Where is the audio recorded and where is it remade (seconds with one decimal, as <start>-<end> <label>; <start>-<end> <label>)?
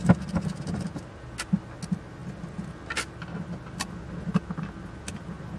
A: 0.0-5.6 recorded